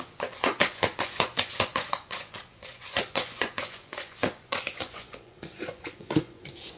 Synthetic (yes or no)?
yes